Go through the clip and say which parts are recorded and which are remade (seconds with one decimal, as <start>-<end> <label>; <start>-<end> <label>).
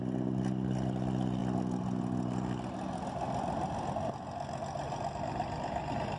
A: 0.0-6.2 recorded